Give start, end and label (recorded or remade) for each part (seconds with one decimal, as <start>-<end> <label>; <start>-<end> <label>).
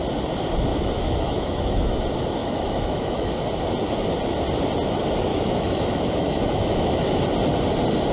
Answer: 0.0-0.7 recorded; 0.7-2.0 remade; 2.0-2.4 recorded; 2.4-3.4 remade; 3.4-5.3 recorded; 5.3-7.2 remade; 7.2-8.1 recorded